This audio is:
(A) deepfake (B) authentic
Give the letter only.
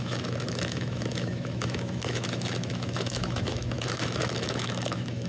A